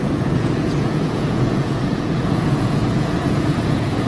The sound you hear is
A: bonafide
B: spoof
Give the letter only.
B